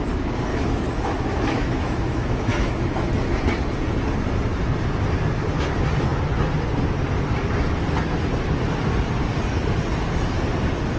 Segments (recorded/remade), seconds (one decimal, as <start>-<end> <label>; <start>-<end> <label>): 0.0-0.5 recorded; 0.5-3.4 remade; 3.4-11.0 recorded